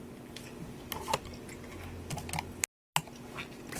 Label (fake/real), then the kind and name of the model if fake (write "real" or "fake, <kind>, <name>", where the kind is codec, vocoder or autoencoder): real